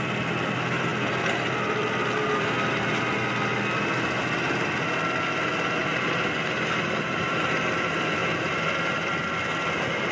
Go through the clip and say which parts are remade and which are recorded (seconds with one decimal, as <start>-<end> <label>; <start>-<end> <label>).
0.0-10.1 recorded